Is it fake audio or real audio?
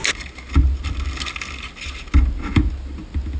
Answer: real